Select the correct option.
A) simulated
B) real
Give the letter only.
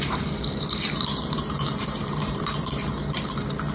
A